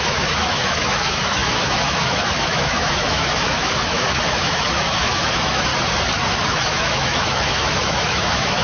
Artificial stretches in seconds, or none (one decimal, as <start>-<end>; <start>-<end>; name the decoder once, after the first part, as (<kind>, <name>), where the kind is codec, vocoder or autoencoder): 0.0-5.7 (autoencoder, DAC-VAE); 6.3-8.6